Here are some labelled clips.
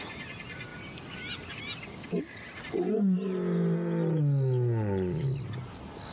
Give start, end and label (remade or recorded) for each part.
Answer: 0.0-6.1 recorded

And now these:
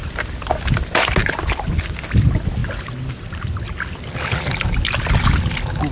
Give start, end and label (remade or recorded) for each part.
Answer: 0.0-5.9 recorded

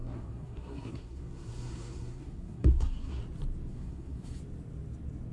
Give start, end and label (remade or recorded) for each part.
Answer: 0.0-3.2 remade; 3.2-3.7 recorded; 3.7-4.4 remade; 4.4-5.3 recorded

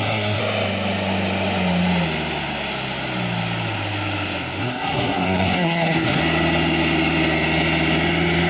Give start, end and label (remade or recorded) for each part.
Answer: 0.0-0.4 remade; 0.4-4.6 recorded; 4.6-6.2 remade; 6.2-8.5 recorded

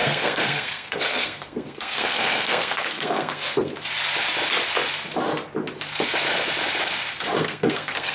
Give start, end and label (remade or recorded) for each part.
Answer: 0.0-3.7 remade; 3.7-7.4 recorded; 7.4-8.1 remade